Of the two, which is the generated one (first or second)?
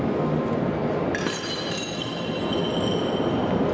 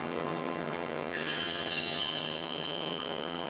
second